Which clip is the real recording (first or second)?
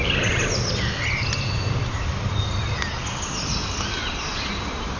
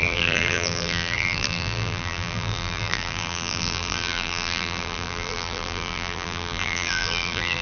first